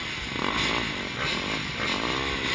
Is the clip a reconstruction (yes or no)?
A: no